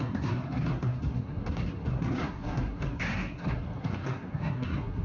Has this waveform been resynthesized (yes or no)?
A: yes